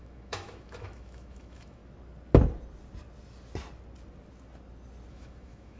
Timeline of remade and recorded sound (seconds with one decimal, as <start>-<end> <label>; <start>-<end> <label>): 0.0-1.8 remade; 1.8-5.1 recorded; 5.1-5.8 remade